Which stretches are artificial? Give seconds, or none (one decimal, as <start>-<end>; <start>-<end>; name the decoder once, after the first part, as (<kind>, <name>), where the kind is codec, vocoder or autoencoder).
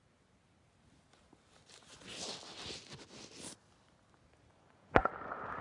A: 4.5-5.1 (vocoder, Vocos)